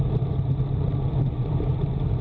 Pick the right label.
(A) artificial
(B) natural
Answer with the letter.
B